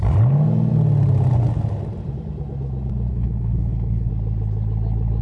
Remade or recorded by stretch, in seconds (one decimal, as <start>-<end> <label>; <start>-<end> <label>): 0.0-3.1 recorded; 3.1-4.1 remade; 4.1-5.2 recorded